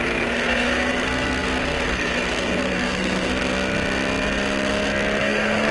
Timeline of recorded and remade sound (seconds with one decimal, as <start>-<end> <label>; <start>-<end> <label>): 0.0-3.3 remade; 3.3-5.2 recorded; 5.2-5.7 remade

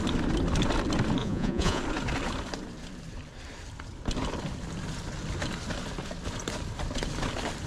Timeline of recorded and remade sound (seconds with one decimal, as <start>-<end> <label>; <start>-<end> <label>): 0.0-1.2 recorded; 1.2-1.8 remade; 1.8-7.7 recorded

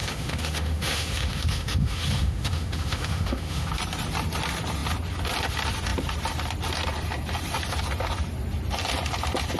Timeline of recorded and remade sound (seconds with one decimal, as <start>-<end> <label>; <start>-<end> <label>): 0.0-3.7 remade; 3.7-9.6 recorded

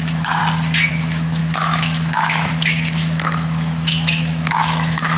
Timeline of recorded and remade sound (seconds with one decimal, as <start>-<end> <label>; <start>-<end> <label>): 0.0-0.4 remade; 0.4-0.9 recorded; 0.9-5.2 remade

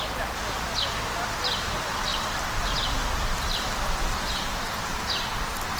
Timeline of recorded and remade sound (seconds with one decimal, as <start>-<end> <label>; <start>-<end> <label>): 0.0-2.1 recorded; 2.1-5.8 remade

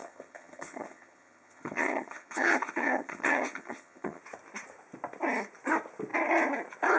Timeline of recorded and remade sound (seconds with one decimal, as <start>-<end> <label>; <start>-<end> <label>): 0.0-4.2 remade; 4.2-7.0 recorded